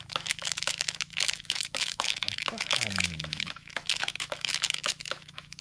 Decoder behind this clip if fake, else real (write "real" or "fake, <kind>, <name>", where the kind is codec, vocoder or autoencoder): fake, autoencoder, DAC-VAE